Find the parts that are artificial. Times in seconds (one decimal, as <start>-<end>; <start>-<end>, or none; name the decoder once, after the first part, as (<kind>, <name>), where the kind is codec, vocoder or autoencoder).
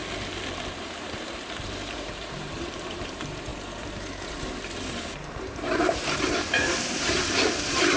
0.7-8.0 (vocoder, BigVGAN v2)